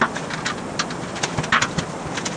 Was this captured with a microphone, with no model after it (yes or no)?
yes